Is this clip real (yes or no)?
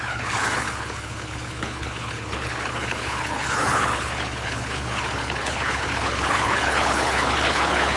no